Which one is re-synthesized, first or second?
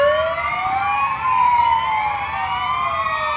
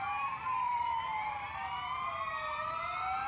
second